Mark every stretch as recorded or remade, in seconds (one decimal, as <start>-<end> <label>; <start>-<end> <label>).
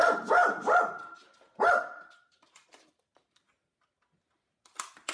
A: 0.0-0.4 recorded; 0.4-3.5 remade; 3.5-5.1 recorded